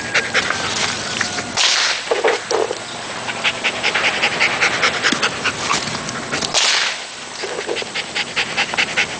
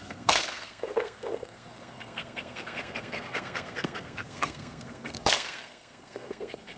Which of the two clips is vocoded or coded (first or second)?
second